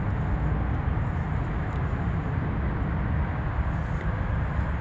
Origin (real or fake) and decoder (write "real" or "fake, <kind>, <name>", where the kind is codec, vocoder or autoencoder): real